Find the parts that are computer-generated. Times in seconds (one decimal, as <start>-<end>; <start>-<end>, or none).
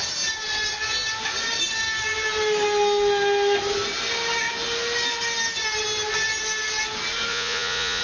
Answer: 7.3-8.0